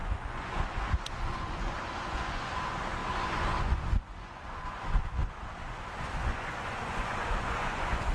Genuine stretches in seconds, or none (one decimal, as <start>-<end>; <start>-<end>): none

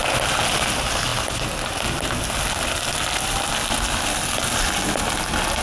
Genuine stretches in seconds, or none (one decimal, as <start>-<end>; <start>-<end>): 0.0-5.6

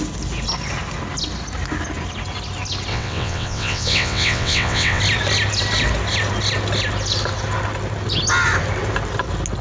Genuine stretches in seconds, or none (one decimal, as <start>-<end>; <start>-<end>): 0.0-2.9; 5.0-9.6

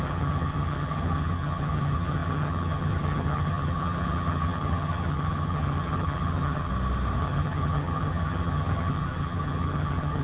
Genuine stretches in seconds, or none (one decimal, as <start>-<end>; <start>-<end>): 6.7-7.2